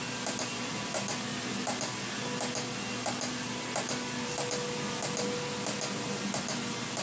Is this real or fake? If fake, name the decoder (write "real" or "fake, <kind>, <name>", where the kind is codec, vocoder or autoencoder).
real